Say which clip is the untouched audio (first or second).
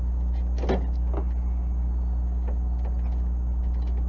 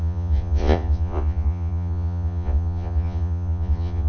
first